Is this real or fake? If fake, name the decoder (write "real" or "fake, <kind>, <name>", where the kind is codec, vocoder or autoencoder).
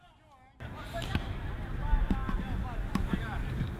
real